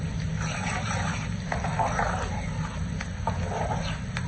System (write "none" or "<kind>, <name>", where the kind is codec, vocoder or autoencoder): none